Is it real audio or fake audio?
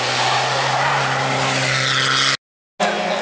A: real